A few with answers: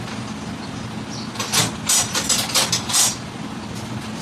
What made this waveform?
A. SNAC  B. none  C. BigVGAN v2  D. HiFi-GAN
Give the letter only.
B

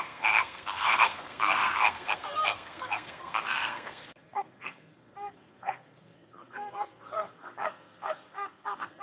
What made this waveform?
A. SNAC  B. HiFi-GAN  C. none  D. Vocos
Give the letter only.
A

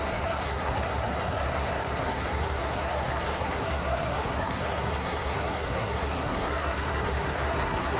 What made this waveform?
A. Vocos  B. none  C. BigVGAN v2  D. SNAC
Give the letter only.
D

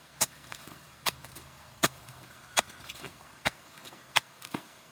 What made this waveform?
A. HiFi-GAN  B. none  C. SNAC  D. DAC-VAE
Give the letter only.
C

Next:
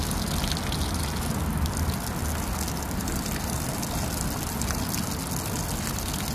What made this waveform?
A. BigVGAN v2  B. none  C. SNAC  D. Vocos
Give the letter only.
B